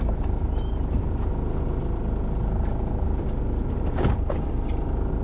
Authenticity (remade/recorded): recorded